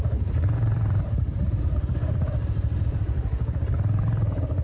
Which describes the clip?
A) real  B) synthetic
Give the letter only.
B